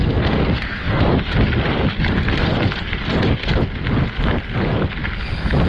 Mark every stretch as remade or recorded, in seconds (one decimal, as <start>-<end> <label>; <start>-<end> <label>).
0.0-1.0 remade; 1.0-5.7 recorded